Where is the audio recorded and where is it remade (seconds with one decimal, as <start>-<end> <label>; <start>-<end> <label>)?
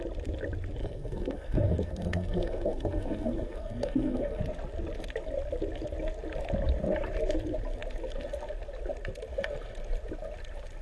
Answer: 0.0-0.8 recorded; 0.8-4.4 remade; 4.4-10.8 recorded